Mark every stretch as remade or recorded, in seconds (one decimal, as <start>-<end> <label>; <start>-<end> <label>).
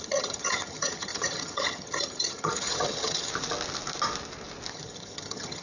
0.0-3.3 remade; 3.3-4.7 recorded; 4.7-5.6 remade